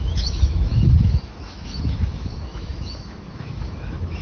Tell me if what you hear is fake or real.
fake